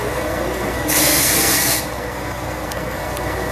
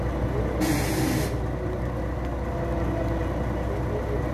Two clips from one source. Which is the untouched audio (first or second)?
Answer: second